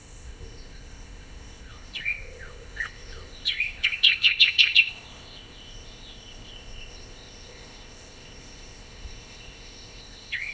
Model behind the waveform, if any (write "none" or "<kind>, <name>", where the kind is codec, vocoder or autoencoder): codec, ZipCodec